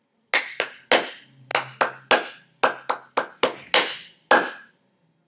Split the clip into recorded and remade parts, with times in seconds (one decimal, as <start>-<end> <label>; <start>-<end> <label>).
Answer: 0.0-5.3 recorded